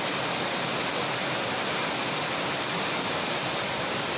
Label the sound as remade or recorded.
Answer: recorded